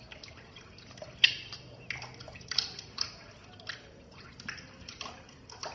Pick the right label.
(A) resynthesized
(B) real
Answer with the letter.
B